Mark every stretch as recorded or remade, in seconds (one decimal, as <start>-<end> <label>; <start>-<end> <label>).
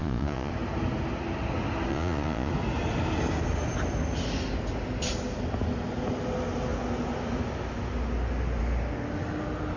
0.0-0.5 remade; 0.5-1.9 recorded; 1.9-2.5 remade; 2.5-9.8 recorded